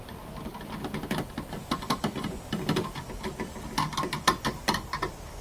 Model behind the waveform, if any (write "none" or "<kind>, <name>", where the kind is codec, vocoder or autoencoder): none